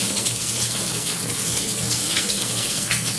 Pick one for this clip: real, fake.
fake